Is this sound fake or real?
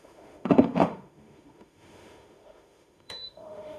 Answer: fake